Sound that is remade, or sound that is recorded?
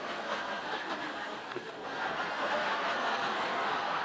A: remade